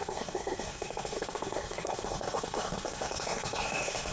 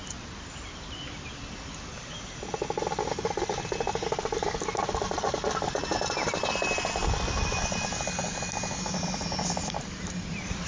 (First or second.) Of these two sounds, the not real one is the first